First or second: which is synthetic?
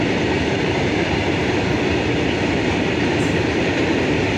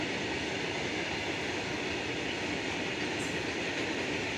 first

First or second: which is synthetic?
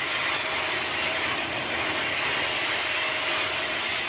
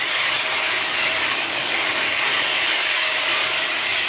second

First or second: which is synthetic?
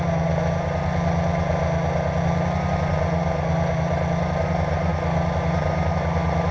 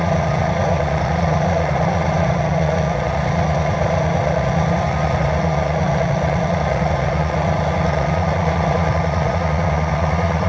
second